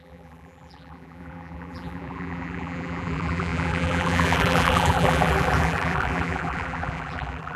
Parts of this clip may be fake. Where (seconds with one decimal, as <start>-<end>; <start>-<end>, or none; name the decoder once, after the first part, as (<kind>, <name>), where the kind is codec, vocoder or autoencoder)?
0.0-7.6 (vocoder, BigVGAN v2)